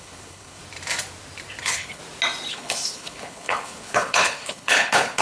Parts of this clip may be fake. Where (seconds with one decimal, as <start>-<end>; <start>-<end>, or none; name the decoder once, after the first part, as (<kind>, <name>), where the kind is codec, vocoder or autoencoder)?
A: 0.0-0.6 (codec, HILCodec); 1.6-2.0; 2.5-5.2